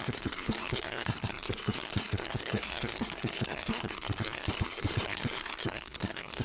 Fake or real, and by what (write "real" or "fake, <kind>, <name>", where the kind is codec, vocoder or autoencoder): fake, codec, SNAC